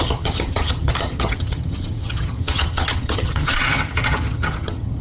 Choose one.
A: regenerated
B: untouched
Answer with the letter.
A